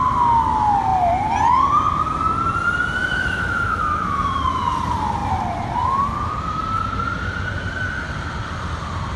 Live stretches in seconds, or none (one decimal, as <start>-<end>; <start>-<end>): 0.0-3.0; 4.6-9.2